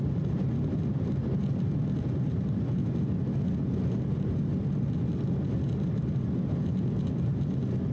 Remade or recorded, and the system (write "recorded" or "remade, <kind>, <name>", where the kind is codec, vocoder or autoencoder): recorded